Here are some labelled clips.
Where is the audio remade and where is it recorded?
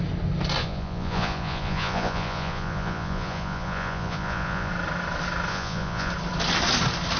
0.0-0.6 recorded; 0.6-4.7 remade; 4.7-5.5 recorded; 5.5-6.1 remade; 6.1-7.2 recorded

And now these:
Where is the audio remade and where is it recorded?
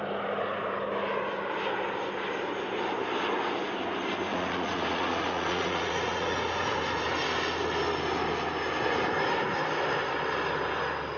0.0-4.3 recorded; 4.3-7.0 remade; 7.0-11.2 recorded